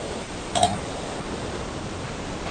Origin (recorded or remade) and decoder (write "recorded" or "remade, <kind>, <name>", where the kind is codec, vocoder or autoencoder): recorded